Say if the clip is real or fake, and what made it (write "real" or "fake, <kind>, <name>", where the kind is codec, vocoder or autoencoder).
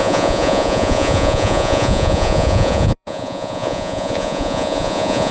fake, vocoder, Vocos